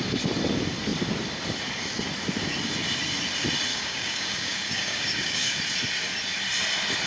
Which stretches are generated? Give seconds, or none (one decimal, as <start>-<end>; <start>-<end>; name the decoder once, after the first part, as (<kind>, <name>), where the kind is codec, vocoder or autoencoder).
3.7-5.6 (codec, DAC)